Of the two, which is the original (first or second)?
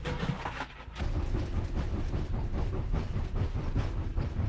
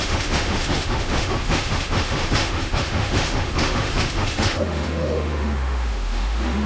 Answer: first